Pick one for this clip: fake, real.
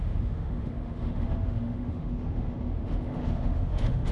fake